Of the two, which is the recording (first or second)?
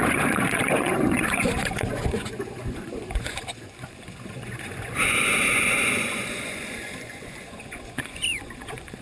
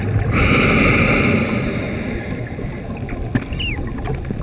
second